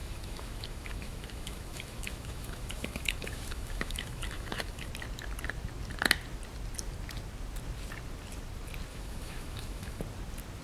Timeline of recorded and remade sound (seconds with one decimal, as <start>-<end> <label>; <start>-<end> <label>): 0.0-4.9 remade; 4.9-8.9 recorded; 8.9-10.0 remade; 10.0-10.6 recorded

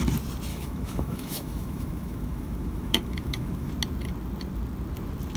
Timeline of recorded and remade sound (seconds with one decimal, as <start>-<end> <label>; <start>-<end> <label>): 0.0-0.5 recorded; 0.5-3.7 remade; 3.7-5.4 recorded

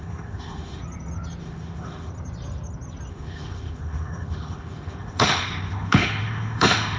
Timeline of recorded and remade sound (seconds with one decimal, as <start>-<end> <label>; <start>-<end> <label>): 0.0-0.8 remade; 0.8-1.4 recorded; 1.4-2.1 remade; 2.1-3.1 recorded; 3.1-7.0 remade

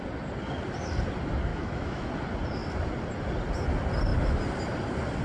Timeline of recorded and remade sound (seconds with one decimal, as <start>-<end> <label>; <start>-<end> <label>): 0.0-1.5 recorded; 1.5-2.1 remade; 2.1-5.2 recorded

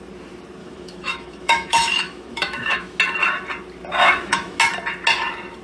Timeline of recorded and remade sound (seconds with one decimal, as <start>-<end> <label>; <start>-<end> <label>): 0.0-0.6 recorded; 0.6-3.0 remade; 3.0-4.0 recorded; 4.0-4.6 remade; 4.6-5.6 recorded

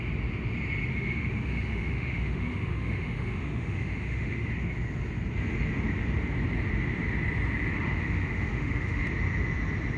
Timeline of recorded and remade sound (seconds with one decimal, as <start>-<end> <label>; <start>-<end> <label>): 0.0-0.9 recorded; 0.9-4.5 remade; 4.5-7.7 recorded; 7.7-9.0 remade; 9.0-10.0 recorded